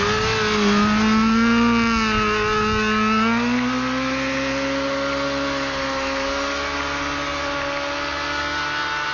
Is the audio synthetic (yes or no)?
no